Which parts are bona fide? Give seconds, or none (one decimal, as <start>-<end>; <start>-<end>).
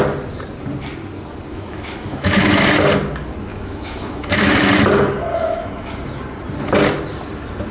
0.0-1.5; 2.5-3.5; 4.7-5.3; 5.9-7.7